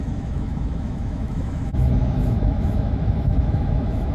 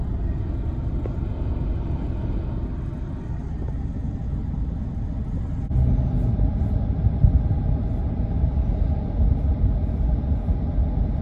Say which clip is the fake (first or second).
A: first